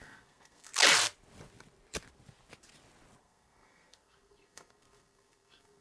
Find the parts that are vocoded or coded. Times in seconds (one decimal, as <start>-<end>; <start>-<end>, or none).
0.0-0.7; 3.2-5.8